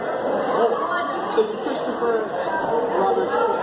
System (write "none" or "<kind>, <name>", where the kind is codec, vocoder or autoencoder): none